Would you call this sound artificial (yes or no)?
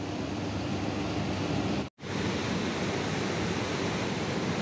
no